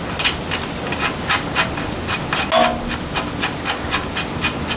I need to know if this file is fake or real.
real